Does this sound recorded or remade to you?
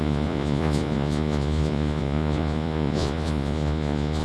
remade